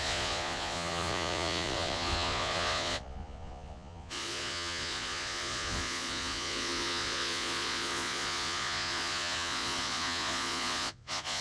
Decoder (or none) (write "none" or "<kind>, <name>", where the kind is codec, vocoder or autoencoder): vocoder, Vocos